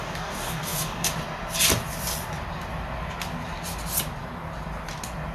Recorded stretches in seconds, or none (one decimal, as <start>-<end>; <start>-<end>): 1.1-5.3